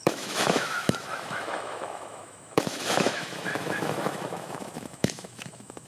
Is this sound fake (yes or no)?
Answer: yes